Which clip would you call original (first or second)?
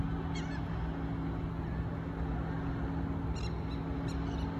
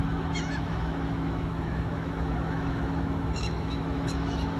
first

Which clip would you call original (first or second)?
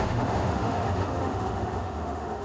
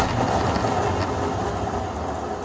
second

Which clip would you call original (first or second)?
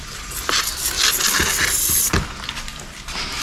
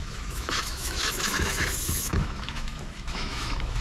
first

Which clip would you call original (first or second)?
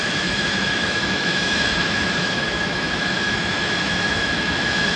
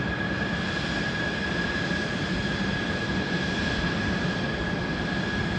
second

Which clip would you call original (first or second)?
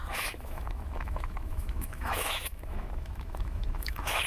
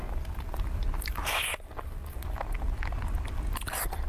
second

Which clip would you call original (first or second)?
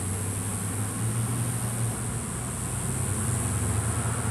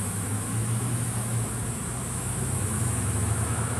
first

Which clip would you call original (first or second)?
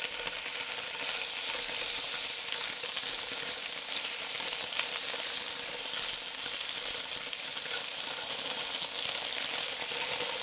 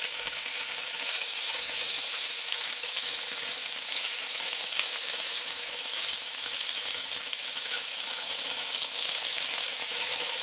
first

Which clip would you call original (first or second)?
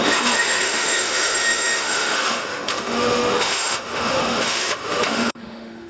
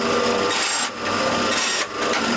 second